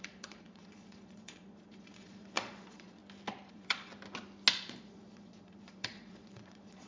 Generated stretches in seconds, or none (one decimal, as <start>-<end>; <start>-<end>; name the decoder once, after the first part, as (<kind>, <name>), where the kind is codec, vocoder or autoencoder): 0.0-3.0 (vocoder, Vocos); 3.5-3.9; 4.5-6.9